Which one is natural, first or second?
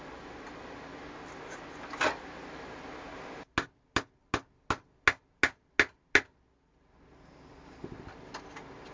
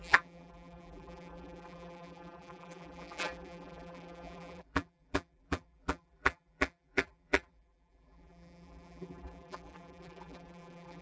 first